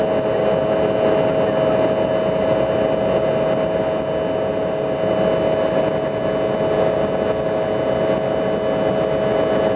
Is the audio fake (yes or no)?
no